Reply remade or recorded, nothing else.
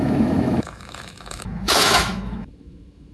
remade